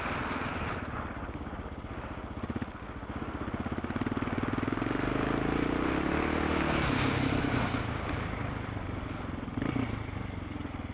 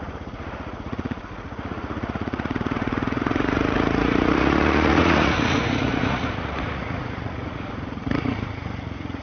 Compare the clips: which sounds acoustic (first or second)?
first